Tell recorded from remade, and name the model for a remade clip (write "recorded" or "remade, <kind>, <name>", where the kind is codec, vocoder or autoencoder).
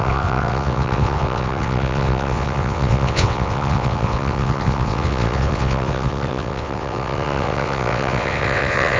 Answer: remade, vocoder, WaveNeXt